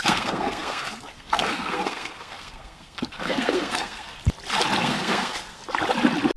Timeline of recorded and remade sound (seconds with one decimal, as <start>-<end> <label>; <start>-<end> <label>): 0.0-4.2 remade; 4.2-4.8 recorded; 4.8-5.6 remade; 5.6-6.4 recorded

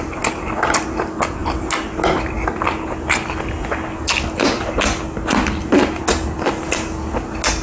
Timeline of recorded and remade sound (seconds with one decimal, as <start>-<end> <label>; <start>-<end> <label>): 0.0-7.6 recorded

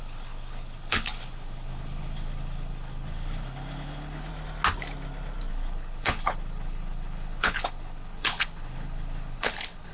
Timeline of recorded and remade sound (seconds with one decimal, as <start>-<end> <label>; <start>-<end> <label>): 0.0-4.3 remade; 4.3-5.5 recorded; 5.5-9.9 remade

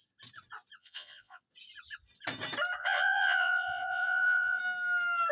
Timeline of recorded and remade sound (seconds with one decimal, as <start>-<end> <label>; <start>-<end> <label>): 0.0-0.8 recorded; 0.8-1.4 remade; 1.4-2.8 recorded; 2.8-4.6 remade; 4.6-5.3 recorded

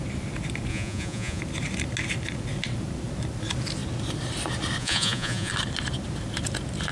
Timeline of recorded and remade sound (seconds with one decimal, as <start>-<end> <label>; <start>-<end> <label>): 0.0-0.7 recorded; 0.7-1.4 remade; 1.4-4.8 recorded; 4.8-5.5 remade; 5.5-6.9 recorded

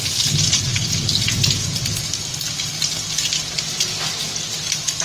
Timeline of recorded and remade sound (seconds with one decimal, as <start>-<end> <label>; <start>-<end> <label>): 0.0-5.0 recorded

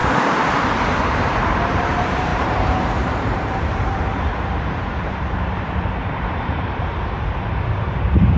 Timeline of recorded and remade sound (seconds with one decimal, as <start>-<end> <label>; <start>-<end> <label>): 0.0-8.4 remade